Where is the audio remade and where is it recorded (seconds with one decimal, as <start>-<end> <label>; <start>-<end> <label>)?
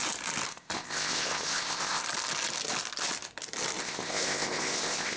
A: 0.0-0.5 recorded; 0.5-2.0 remade; 2.0-3.8 recorded; 3.8-5.2 remade